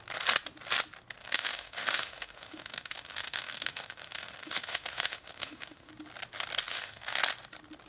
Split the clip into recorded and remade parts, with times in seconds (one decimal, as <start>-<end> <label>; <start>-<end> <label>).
0.0-1.2 recorded; 1.2-5.9 remade; 5.9-6.7 recorded; 6.7-7.2 remade; 7.2-7.9 recorded

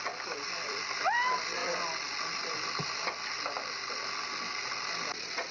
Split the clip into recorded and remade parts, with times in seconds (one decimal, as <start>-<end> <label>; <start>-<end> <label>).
0.0-5.5 recorded

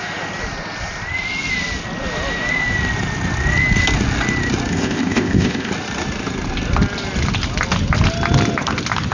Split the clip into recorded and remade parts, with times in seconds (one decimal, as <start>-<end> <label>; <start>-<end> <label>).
0.0-4.7 recorded; 4.7-5.7 remade; 5.7-9.1 recorded

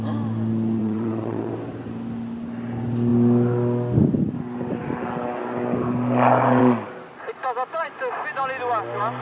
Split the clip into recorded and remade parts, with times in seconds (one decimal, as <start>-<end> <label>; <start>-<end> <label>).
0.0-0.8 recorded; 0.8-1.5 remade; 1.5-9.2 recorded

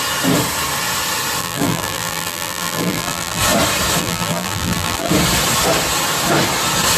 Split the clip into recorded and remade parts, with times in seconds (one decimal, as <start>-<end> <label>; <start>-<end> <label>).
0.0-1.4 recorded; 1.4-3.4 remade; 3.4-4.0 recorded; 4.0-5.1 remade; 5.1-7.0 recorded